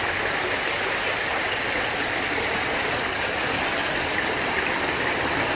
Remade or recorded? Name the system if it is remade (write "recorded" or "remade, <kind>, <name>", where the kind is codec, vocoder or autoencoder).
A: recorded